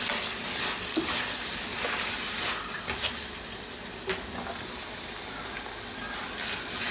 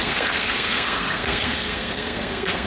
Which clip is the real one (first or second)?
first